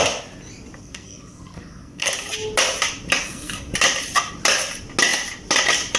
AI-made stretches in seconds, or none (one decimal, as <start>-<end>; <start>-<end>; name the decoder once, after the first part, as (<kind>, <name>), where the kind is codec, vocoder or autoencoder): 0.8-2.1 (codec, SNAC); 3.2-3.7